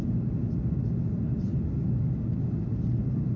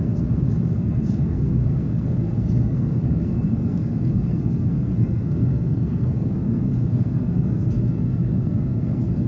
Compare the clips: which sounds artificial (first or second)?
second